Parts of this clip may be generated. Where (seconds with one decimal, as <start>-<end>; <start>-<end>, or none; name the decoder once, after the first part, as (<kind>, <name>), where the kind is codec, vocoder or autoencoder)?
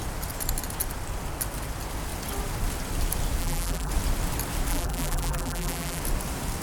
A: 3.4-3.9 (vocoder, BigVGAN v2); 4.7-6.0